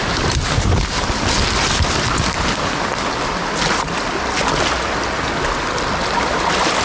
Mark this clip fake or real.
real